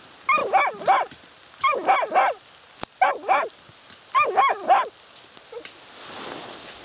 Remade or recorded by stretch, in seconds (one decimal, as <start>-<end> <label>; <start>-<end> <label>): 0.0-6.8 recorded